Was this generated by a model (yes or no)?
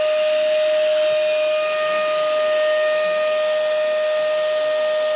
no